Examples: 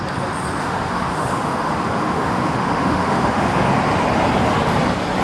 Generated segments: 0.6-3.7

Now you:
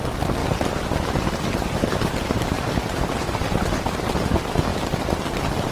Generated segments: 0.4-3.8

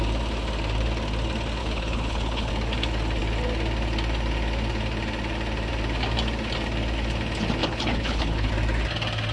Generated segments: 1.6-2.5; 7.6-8.5

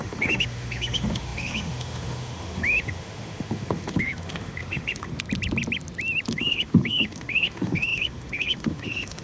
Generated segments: 0.0-5.1; 6.3-9.2

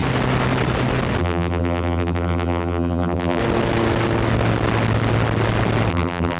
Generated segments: 1.2-3.4; 5.9-6.4

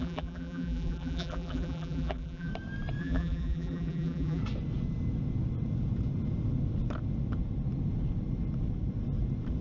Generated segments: 0.0-2.5; 3.0-4.4